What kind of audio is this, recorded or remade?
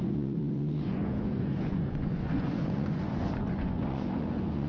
remade